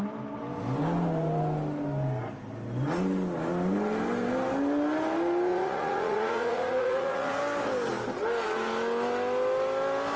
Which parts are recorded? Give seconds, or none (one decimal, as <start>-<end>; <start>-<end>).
0.0-5.5; 7.4-10.2